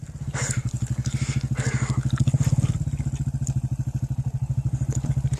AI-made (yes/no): no